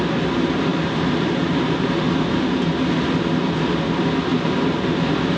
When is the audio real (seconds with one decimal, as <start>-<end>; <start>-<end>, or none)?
0.0-0.7; 1.8-4.3